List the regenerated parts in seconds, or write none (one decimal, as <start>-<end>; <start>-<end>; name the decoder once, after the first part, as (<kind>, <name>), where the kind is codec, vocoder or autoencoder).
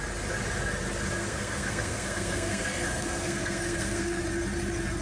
1.2-4.2 (codec, SNAC)